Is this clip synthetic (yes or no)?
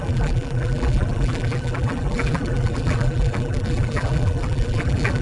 yes